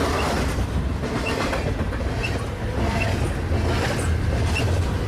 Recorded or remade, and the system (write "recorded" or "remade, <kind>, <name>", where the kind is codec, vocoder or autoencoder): recorded